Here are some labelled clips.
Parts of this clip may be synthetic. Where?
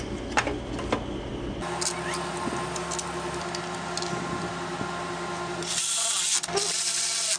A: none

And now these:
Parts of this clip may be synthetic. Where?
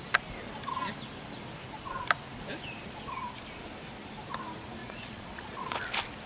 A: 4.8-5.8 (vocoder, Vocos)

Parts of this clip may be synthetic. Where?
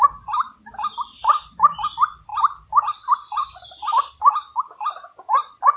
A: none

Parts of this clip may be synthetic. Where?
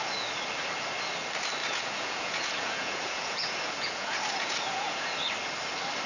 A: 1.6-5.1 (vocoder, Vocos)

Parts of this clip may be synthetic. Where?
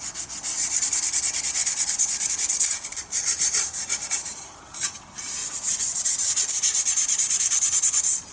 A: 1.6-2.3 (vocoder, Vocos); 5.4-6.0